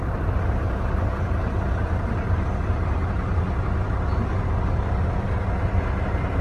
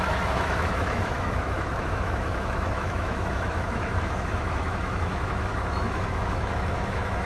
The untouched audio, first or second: first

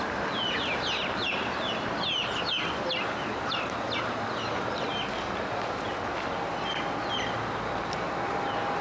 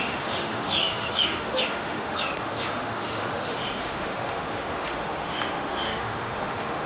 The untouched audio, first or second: first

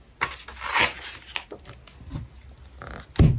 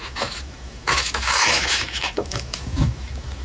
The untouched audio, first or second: first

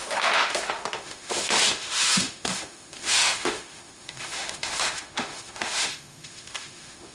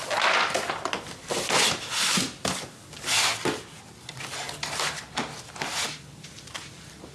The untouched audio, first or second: second